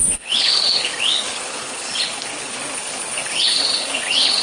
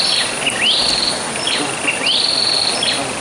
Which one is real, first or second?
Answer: second